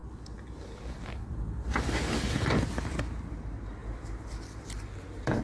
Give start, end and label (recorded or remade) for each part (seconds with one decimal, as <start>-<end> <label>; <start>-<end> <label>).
0.0-0.6 recorded; 0.6-5.4 remade